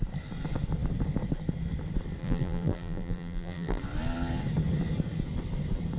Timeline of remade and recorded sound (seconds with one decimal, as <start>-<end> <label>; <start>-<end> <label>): 0.0-2.2 recorded; 2.2-3.8 remade; 3.8-6.0 recorded